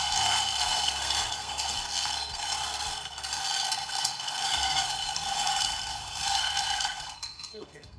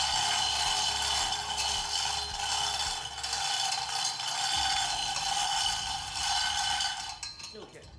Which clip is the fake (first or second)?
first